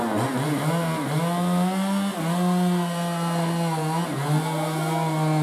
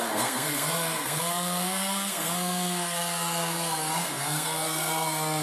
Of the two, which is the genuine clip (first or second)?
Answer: first